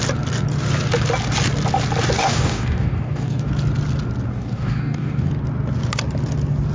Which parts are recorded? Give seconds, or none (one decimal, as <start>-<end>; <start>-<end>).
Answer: 0.0-2.2; 3.5-4.3; 5.3-6.7